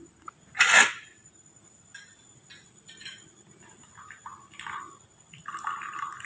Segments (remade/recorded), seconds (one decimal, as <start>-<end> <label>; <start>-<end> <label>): 0.0-0.9 recorded; 0.9-1.6 remade; 1.6-6.3 recorded